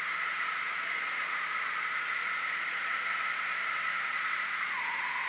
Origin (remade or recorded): remade